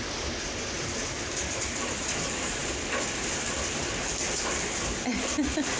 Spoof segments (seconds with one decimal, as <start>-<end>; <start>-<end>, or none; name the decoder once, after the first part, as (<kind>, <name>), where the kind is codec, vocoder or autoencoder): none